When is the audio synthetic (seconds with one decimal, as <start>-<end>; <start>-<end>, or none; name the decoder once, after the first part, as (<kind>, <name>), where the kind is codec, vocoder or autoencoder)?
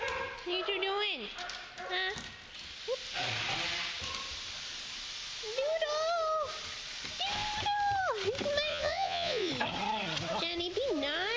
8.7-9.5 (vocoder, Vocos)